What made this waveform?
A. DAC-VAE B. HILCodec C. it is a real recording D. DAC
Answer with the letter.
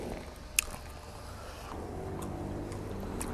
C